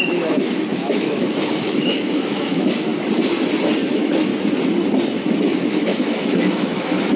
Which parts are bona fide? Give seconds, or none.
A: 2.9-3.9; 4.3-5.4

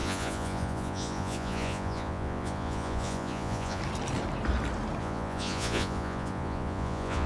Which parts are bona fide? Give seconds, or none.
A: 3.8-5.0